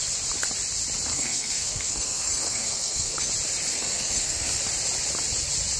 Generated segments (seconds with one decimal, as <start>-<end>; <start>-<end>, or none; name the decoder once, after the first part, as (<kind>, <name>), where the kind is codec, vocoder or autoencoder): 1.1-3.3 (codec, SNAC); 3.7-4.6